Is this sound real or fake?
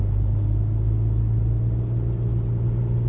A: real